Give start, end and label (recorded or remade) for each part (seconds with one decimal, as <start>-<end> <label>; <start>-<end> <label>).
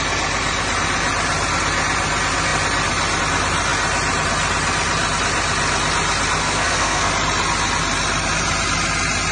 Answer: 0.0-6.4 recorded; 6.4-7.1 remade; 7.1-9.3 recorded